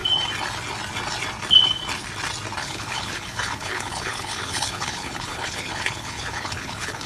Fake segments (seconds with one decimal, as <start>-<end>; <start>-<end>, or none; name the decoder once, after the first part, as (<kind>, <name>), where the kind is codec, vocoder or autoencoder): 2.6-7.1 (codec, HILCodec)